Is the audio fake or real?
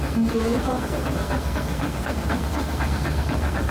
fake